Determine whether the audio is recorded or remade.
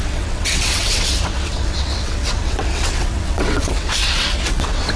remade